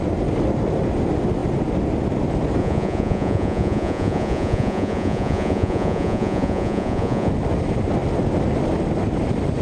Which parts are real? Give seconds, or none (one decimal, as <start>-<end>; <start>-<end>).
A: 0.0-2.6; 7.3-9.6